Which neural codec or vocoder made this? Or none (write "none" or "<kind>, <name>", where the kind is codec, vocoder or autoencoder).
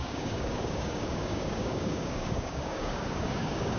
codec, DAC